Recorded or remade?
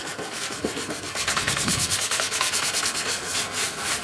remade